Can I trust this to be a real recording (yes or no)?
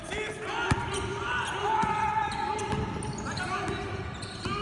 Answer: yes